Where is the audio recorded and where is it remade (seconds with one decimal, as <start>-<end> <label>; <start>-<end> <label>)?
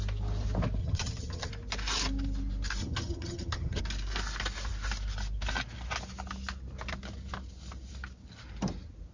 0.0-0.8 recorded; 0.8-1.5 remade; 1.5-2.8 recorded; 2.8-3.8 remade; 3.8-9.1 recorded